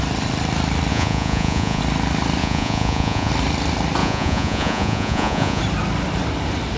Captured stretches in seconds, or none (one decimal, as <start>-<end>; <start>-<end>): 0.0-0.9; 1.8-2.4; 3.3-4.0; 5.6-6.8